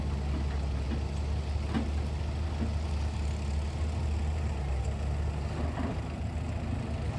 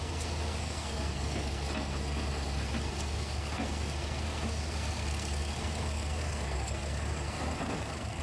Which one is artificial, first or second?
second